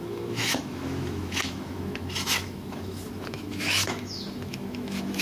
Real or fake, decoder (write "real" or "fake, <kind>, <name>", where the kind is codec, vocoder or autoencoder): fake, autoencoder, DAC-VAE